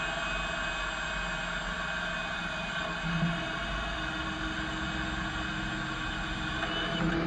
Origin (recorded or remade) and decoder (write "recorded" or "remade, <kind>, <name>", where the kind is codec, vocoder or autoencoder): recorded